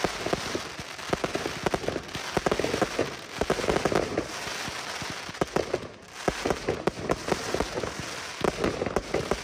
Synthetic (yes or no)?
no